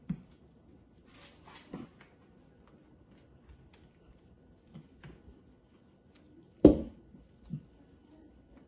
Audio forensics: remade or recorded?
recorded